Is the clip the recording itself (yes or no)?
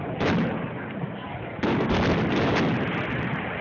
yes